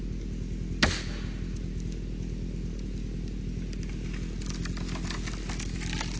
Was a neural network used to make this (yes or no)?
no